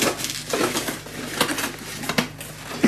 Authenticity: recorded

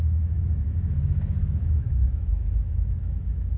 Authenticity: remade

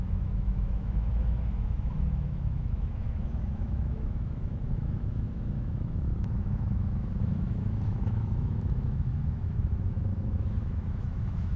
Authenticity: remade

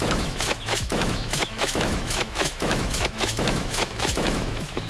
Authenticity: remade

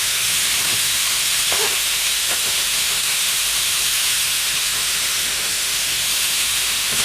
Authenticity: remade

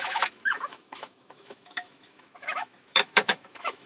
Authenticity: remade